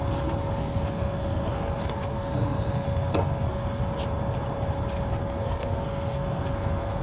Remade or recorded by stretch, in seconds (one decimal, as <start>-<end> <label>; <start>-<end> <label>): 0.0-3.8 remade; 3.8-5.1 recorded; 5.1-7.0 remade